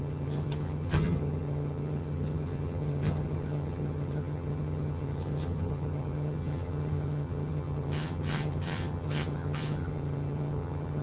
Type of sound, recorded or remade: remade